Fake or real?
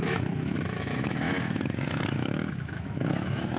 fake